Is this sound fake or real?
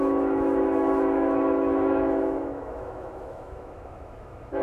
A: fake